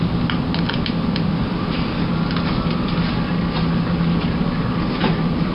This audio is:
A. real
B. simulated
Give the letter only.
A